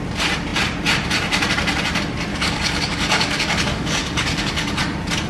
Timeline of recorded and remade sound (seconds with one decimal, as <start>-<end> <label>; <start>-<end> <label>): 0.0-2.3 recorded; 2.3-4.8 remade; 4.8-5.3 recorded